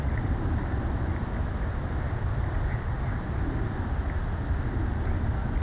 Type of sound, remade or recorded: recorded